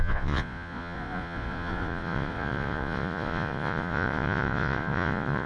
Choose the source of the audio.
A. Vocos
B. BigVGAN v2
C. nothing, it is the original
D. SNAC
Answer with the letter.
A